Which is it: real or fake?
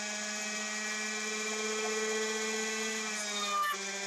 real